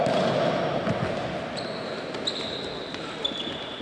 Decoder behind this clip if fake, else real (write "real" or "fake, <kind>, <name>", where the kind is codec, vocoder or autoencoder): real